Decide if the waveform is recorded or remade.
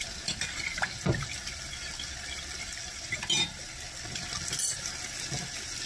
recorded